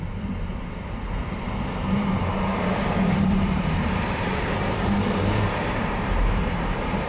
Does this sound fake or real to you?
fake